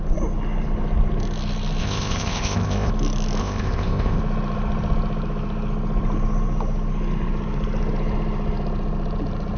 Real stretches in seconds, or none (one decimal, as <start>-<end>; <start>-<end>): 0.0-1.8; 2.9-3.4; 4.2-9.6